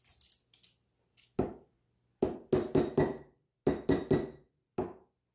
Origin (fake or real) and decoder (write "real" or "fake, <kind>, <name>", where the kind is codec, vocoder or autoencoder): real